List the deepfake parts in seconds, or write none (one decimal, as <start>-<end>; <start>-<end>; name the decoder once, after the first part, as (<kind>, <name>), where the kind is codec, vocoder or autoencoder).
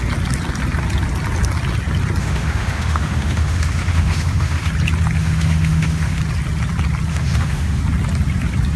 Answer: 2.2-4.7 (autoencoder, DAC-VAE); 5.2-6.2; 7.1-7.8